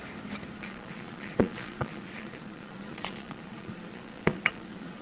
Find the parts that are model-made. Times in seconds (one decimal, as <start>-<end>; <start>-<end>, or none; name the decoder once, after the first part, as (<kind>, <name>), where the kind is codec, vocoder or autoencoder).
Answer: 0.6-5.0 (vocoder, Vocos)